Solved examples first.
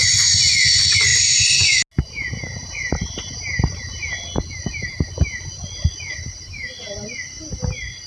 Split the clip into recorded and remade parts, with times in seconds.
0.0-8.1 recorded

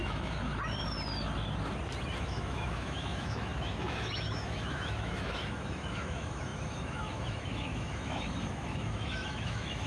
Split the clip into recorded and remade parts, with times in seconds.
0.0-0.5 remade; 0.5-2.2 recorded; 2.2-9.9 remade

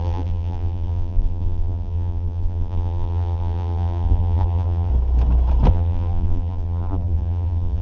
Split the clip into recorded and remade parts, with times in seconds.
0.0-4.9 remade; 4.9-5.7 recorded; 5.7-7.8 remade